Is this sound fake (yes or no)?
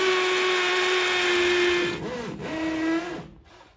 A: no